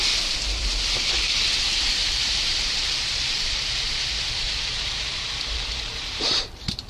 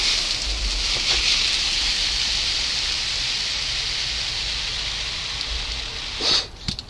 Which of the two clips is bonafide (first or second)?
second